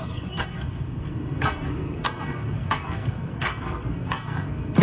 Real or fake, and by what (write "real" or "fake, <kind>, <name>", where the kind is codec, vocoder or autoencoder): fake, codec, SNAC